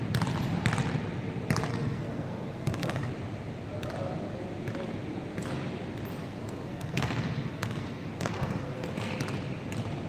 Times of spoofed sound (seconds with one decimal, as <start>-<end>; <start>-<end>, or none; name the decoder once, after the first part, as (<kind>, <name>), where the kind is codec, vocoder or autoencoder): 1.7-3.1 (codec, SNAC); 6.2-9.2